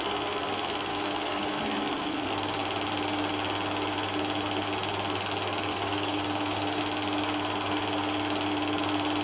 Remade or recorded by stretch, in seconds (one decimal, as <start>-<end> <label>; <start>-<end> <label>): 0.0-0.9 recorded; 0.9-1.6 remade; 1.6-5.7 recorded; 5.7-6.8 remade; 6.8-9.2 recorded